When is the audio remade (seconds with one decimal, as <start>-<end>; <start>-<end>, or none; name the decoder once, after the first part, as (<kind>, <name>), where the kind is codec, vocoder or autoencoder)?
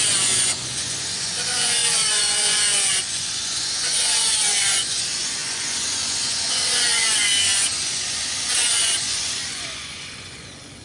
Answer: 0.0-10.8 (vocoder, Vocos)